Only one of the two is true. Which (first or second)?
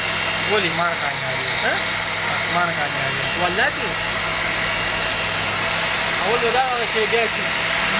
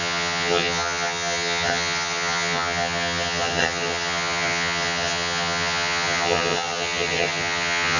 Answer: first